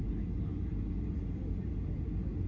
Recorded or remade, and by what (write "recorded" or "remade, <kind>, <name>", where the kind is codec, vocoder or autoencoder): recorded